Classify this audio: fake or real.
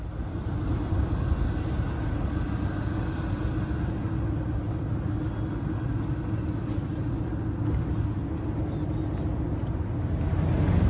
real